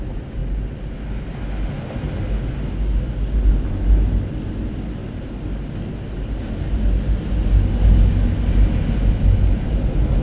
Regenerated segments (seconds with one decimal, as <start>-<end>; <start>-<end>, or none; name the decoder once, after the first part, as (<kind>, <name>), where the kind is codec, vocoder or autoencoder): none